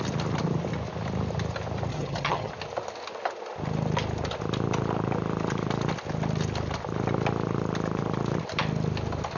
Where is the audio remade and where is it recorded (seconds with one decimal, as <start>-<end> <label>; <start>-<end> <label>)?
0.0-1.9 recorded; 1.9-2.5 remade; 2.5-9.4 recorded